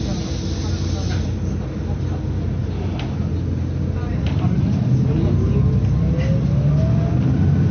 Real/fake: real